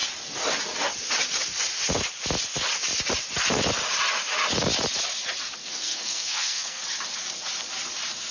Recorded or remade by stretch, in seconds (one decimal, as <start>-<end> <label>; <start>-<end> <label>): 0.0-5.6 recorded; 5.6-6.8 remade; 6.8-8.3 recorded